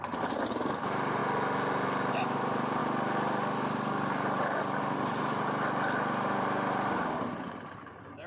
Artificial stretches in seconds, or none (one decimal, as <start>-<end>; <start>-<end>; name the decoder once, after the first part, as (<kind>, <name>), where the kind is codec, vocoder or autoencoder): 0.0-1.2 (vocoder, BigVGAN v2); 2.1-2.8; 4.8-8.3